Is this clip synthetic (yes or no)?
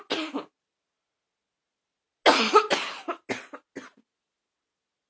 no